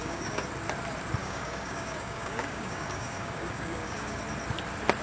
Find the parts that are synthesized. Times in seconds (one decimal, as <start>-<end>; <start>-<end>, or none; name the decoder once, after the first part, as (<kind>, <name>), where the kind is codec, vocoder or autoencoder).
0.0-0.5 (codec, DAC); 1.2-4.2